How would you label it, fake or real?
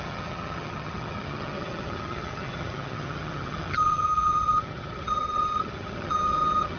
fake